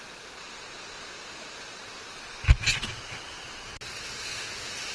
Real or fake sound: real